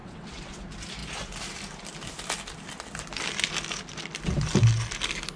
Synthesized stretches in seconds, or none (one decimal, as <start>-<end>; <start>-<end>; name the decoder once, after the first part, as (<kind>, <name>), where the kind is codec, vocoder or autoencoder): 0.0-0.6 (vocoder, WaveNeXt)